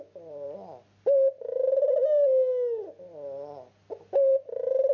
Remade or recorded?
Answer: recorded